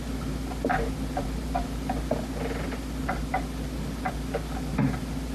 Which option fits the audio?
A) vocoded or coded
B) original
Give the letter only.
B